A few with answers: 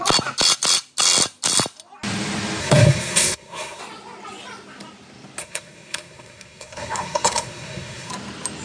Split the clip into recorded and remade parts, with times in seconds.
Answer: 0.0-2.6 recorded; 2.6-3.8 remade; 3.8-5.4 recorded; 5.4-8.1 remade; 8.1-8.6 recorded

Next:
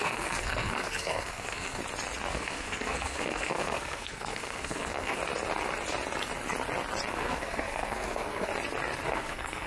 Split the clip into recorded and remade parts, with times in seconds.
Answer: 0.0-1.8 remade; 1.8-2.3 recorded; 2.3-5.2 remade; 5.2-7.1 recorded; 7.1-8.5 remade; 8.5-9.1 recorded; 9.1-9.7 remade

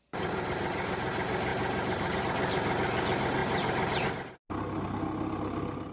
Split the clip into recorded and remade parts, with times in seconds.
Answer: 0.0-5.9 recorded

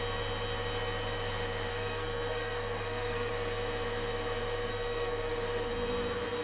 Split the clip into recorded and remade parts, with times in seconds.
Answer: 0.0-1.7 recorded; 1.7-3.3 remade; 3.3-4.7 recorded; 4.7-5.3 remade; 5.3-6.4 recorded

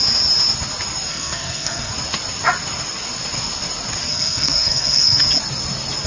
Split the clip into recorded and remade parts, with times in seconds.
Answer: 0.0-1.1 recorded; 1.1-1.9 remade; 1.9-4.1 recorded; 4.1-5.2 remade; 5.2-6.1 recorded

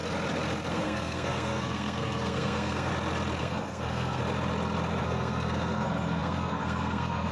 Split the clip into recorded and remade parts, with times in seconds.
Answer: 0.0-0.7 recorded; 0.7-2.9 remade; 2.9-3.4 recorded; 3.4-4.2 remade; 4.2-5.0 recorded; 5.0-7.3 remade